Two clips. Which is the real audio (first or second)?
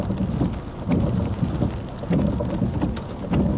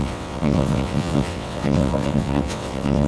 first